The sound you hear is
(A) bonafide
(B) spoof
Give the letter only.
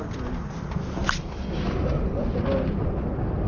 A